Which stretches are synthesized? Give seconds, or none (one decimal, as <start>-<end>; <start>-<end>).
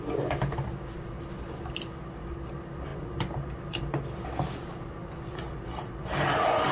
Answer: none